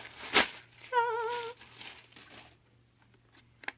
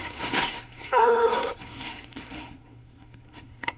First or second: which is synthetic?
second